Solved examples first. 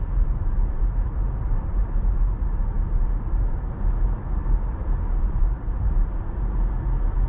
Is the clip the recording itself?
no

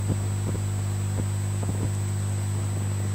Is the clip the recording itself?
yes